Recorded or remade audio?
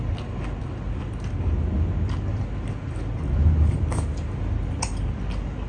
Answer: recorded